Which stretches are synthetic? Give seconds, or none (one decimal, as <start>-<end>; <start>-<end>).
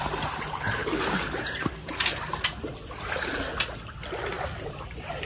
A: 0.0-3.5; 4.6-5.2